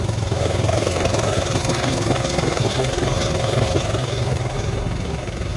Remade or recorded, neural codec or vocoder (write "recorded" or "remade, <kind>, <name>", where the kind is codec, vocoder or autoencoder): remade, codec, SNAC